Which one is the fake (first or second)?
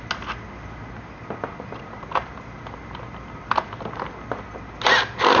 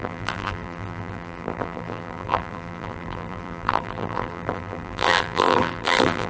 second